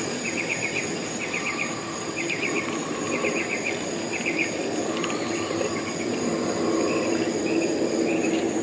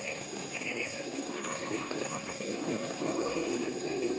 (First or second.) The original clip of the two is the first